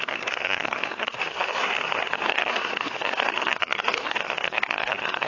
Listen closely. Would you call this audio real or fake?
fake